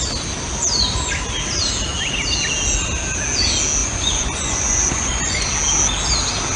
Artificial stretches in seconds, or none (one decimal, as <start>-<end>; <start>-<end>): 3.8-5.5